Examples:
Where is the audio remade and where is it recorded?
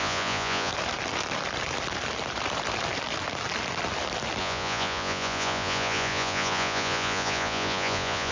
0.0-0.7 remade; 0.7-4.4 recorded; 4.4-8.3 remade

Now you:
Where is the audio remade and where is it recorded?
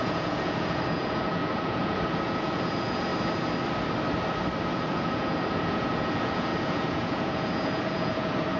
0.0-3.1 remade; 3.1-4.6 recorded; 4.6-8.6 remade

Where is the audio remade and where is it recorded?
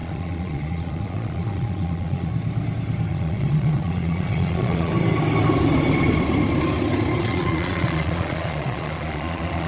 0.0-2.3 remade; 2.3-3.1 recorded; 3.1-4.9 remade; 4.9-7.2 recorded; 7.2-9.7 remade